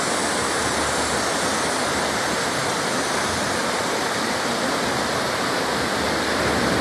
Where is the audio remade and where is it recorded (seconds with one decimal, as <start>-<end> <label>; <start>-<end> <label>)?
0.0-6.8 recorded

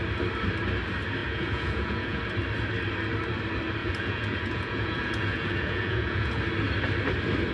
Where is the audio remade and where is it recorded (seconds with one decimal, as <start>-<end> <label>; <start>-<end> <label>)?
0.0-1.2 recorded; 1.2-2.2 remade; 2.2-3.8 recorded; 3.8-6.4 remade; 6.4-7.5 recorded

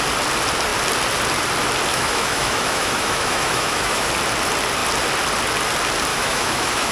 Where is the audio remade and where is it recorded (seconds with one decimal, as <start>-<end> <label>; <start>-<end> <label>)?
0.0-1.9 recorded; 1.9-4.1 remade; 4.1-6.1 recorded; 6.1-6.9 remade

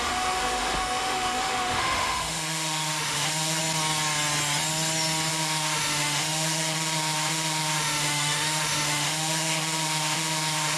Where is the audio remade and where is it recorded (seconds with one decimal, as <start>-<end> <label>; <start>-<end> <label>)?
0.0-3.6 remade; 3.6-5.3 recorded; 5.3-10.8 remade

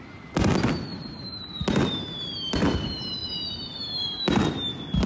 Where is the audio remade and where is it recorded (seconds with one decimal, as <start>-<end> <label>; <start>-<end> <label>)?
0.0-0.9 recorded; 0.9-1.6 remade; 1.6-3.2 recorded; 3.2-4.2 remade; 4.2-5.1 recorded

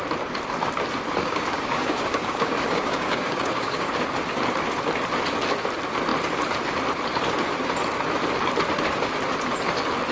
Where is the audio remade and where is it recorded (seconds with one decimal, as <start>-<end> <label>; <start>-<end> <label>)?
0.0-1.2 recorded; 1.2-3.9 remade; 3.9-10.1 recorded

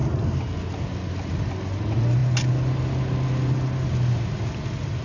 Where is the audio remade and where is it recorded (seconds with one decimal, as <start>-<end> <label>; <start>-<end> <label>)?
0.0-5.0 recorded